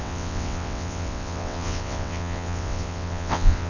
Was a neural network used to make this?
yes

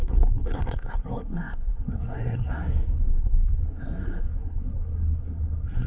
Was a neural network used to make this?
yes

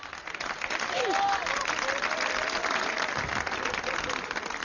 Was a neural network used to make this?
no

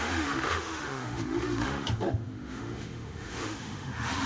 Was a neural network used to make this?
yes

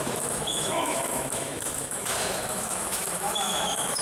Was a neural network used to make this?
yes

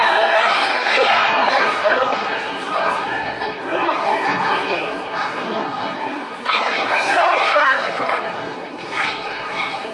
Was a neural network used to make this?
yes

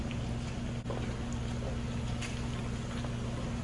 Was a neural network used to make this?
no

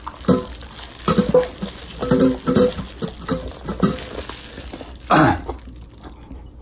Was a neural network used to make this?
no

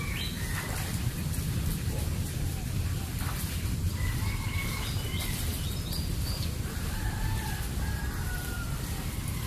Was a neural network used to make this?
yes